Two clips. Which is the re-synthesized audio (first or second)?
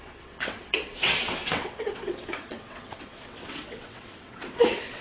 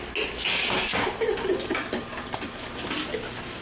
first